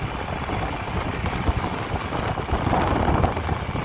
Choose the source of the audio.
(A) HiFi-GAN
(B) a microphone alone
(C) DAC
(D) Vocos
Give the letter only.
B